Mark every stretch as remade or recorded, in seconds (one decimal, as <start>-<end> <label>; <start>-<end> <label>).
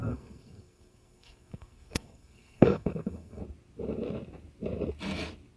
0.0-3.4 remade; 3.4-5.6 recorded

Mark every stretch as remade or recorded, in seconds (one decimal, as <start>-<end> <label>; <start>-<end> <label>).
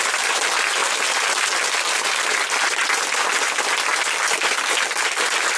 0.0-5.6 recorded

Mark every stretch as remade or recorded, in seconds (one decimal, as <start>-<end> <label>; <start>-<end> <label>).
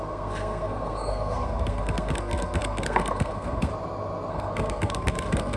0.0-3.7 remade; 3.7-4.3 recorded; 4.3-5.6 remade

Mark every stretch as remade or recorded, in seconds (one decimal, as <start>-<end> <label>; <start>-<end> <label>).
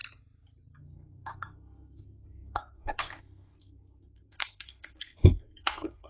0.0-0.8 recorded; 0.8-6.1 remade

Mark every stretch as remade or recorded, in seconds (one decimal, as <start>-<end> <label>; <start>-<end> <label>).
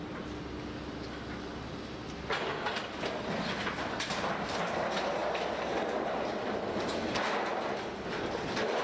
0.0-8.8 recorded